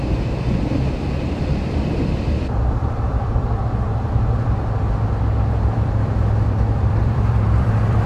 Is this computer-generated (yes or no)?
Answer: yes